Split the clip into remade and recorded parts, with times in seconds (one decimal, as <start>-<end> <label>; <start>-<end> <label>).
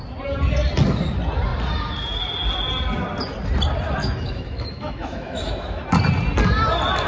0.0-4.0 recorded; 4.0-5.8 remade; 5.8-7.1 recorded